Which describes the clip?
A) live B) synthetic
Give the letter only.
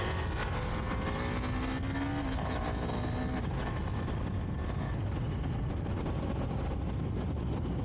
A